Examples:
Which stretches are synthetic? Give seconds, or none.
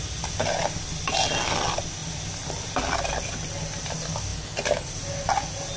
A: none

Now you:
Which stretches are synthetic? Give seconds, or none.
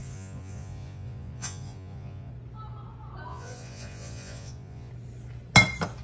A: 0.0-2.3 (vocoder, Vocos); 3.3-4.9